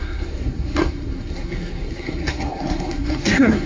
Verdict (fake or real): fake